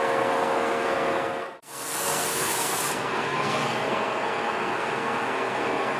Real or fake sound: fake